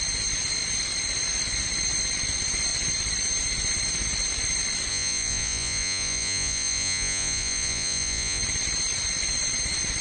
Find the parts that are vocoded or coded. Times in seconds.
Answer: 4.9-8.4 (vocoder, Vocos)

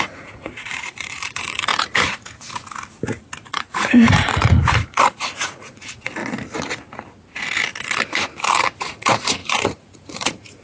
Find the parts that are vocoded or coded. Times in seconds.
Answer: 0.0-1.7 (vocoder, Vocos); 3.5-6.2; 8.8-10.6

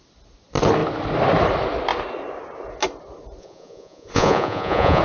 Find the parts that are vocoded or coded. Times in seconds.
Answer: 3.4-5.0 (vocoder, Vocos)